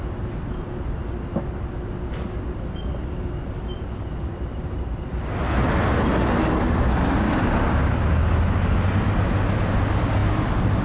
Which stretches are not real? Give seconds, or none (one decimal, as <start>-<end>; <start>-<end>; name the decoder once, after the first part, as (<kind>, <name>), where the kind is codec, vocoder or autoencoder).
none